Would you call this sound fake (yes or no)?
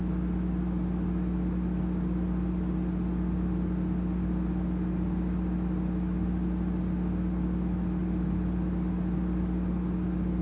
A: no